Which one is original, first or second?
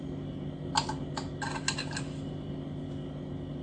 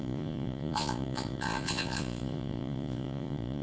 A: first